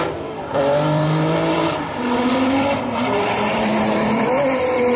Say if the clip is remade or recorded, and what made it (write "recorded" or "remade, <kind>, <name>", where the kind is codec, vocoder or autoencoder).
remade, vocoder, BigVGAN v2